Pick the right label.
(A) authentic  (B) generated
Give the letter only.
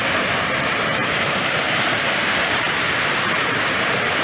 B